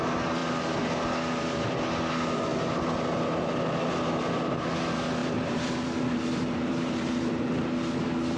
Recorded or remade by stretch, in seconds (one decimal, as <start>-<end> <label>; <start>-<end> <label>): 0.0-5.2 recorded; 5.2-7.5 remade; 7.5-8.4 recorded